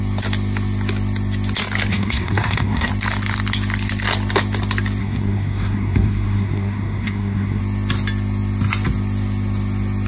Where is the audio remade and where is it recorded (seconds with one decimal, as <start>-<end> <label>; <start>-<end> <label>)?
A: 0.0-1.9 recorded; 1.9-2.9 remade; 2.9-5.0 recorded; 5.0-7.6 remade; 7.6-10.1 recorded